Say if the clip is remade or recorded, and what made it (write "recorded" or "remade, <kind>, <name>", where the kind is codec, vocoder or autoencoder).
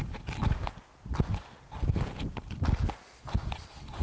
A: recorded